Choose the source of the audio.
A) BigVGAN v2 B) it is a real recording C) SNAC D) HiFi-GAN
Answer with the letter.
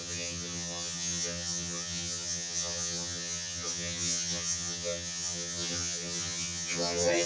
D